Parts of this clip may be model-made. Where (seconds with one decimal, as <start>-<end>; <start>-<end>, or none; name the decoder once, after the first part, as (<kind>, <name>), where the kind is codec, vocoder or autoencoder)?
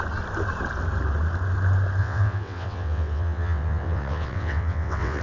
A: 2.0-5.2 (vocoder, WaveNeXt)